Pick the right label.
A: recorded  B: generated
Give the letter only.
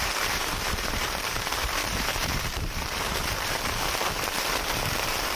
B